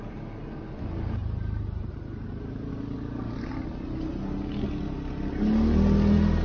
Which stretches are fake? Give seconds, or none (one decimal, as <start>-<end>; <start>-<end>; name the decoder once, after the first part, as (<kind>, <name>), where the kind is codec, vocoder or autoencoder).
1.2-2.7 (vocoder, BigVGAN v2)